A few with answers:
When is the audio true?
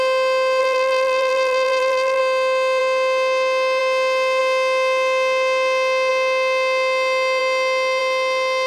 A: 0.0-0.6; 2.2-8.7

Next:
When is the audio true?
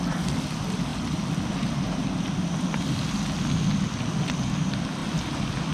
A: 0.0-5.7